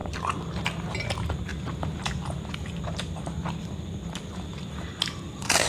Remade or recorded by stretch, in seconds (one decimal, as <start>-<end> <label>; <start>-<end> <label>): 0.0-0.9 recorded; 0.9-1.5 remade; 1.5-4.2 recorded; 4.2-5.7 remade